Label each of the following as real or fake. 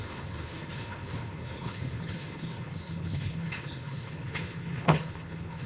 fake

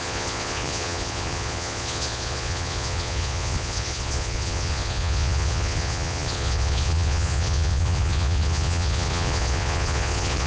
fake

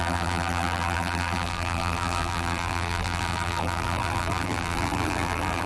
fake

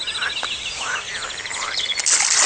real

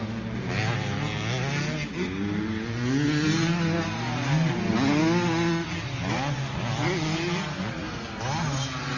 real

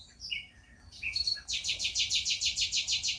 real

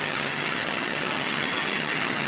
fake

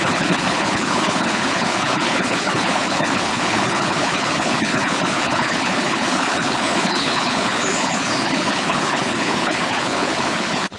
fake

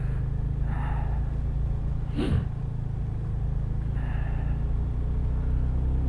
real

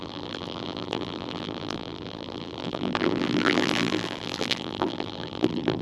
fake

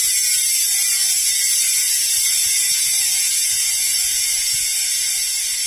fake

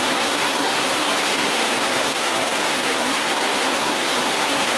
fake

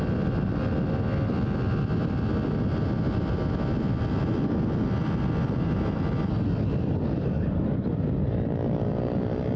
real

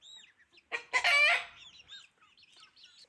real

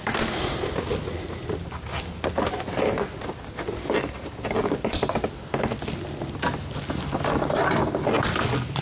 real